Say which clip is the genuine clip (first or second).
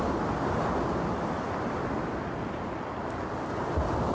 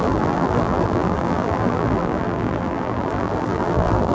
first